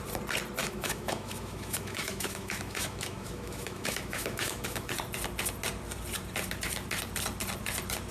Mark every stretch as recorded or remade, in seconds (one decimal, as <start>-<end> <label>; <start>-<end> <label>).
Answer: 0.0-0.6 recorded; 0.6-4.9 remade; 4.9-8.1 recorded